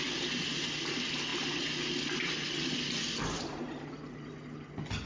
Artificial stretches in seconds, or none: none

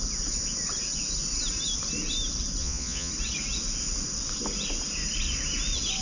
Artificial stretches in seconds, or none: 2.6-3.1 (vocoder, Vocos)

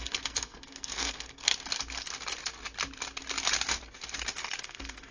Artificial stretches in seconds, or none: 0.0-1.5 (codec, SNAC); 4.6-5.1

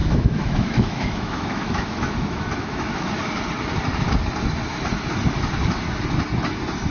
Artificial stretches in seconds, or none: 0.0-3.1 (autoencoder, DAC-VAE)

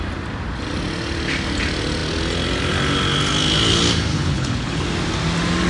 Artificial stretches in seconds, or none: 4.1-4.8 (codec, HILCodec)

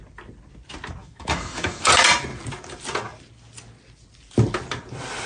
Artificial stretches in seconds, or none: 1.0-1.9 (autoencoder, DAC-VAE)

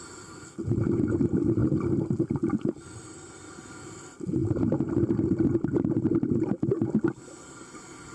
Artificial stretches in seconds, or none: none

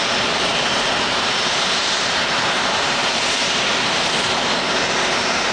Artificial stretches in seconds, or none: 1.8-3.7 (vocoder, BigVGAN v2)